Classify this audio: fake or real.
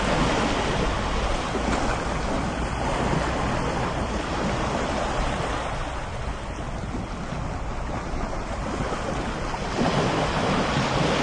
real